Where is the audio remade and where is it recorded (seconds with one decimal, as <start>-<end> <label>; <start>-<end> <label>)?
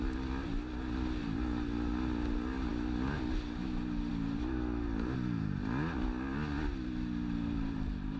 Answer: 0.0-8.2 recorded